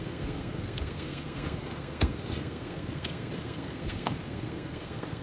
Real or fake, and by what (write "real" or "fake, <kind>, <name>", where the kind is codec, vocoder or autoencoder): fake, codec, SNAC